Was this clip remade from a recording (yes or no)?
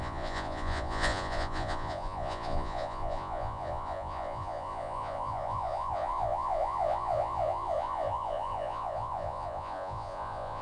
yes